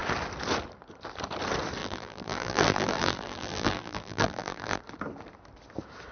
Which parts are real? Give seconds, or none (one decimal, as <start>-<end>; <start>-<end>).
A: 0.0-1.8; 4.8-6.1